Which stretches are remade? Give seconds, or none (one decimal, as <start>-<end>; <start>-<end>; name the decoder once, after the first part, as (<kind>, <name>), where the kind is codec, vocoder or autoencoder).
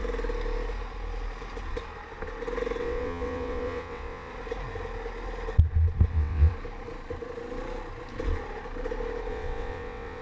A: 2.8-4.3 (vocoder, WaveNeXt); 6.1-6.5; 9.3-10.2